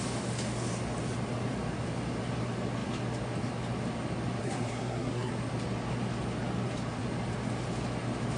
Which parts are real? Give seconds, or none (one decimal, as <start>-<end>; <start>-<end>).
0.0-4.4; 5.3-8.4